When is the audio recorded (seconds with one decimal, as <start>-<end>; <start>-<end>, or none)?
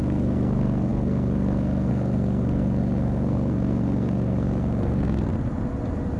5.3-6.2